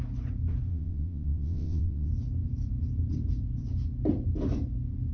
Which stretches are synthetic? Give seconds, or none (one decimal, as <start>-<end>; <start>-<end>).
0.7-2.1